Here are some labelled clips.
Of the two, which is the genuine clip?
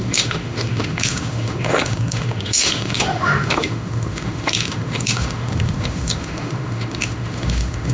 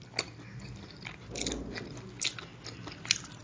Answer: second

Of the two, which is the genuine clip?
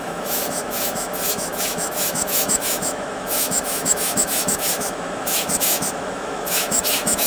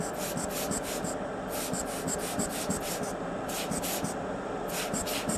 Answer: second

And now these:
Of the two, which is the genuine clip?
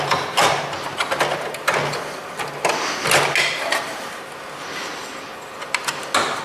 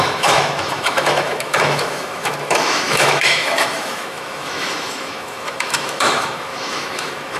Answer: first